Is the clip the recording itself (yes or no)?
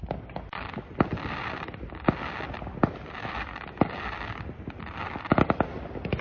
yes